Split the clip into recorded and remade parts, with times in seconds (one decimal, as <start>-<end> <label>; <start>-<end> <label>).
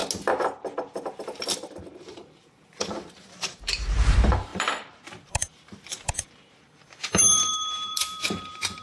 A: 0.0-2.0 recorded; 2.0-8.8 remade